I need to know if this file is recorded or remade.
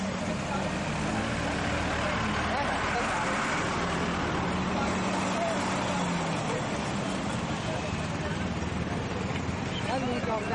recorded